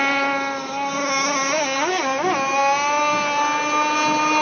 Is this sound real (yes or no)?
yes